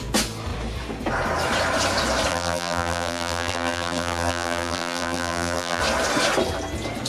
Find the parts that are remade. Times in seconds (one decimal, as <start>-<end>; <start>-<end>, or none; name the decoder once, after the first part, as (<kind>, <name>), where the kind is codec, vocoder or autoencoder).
2.3-5.8 (vocoder, BigVGAN v2)